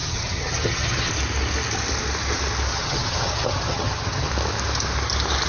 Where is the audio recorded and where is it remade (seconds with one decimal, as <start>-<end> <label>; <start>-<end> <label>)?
0.0-1.1 remade; 1.1-2.7 recorded; 2.7-4.3 remade; 4.3-5.5 recorded